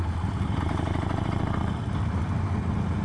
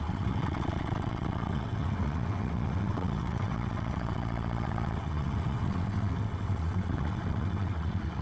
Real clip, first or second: first